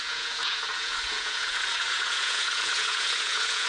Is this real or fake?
fake